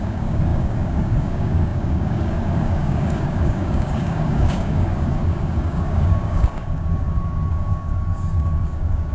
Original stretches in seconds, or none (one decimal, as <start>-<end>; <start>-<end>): none